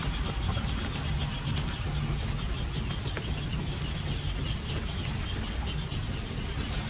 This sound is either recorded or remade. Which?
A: recorded